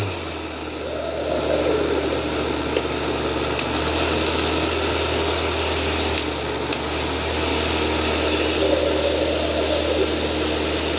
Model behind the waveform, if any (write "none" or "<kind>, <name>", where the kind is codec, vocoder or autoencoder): none